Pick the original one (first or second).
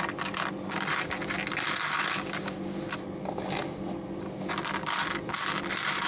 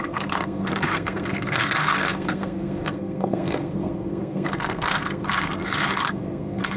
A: first